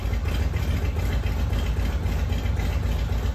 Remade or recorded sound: recorded